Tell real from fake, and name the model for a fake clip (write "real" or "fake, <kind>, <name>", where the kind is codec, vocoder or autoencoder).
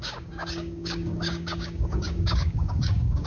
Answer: fake, codec, DAC